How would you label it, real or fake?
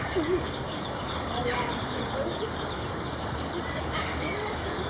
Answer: fake